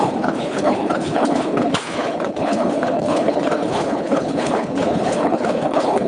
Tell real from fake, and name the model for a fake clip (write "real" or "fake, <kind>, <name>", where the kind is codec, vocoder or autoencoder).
fake, codec, HILCodec